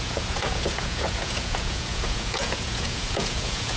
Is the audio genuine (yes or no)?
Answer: no